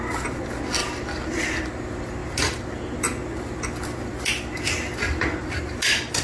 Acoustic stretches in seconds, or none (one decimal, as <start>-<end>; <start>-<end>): 0.0-6.2